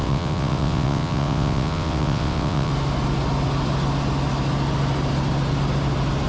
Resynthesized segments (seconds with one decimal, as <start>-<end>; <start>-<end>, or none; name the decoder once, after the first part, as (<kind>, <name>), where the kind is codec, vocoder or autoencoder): 0.0-2.7 (vocoder, WaveNeXt)